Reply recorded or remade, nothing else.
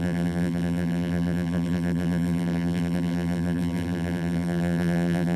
remade